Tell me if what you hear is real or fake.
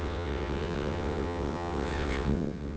fake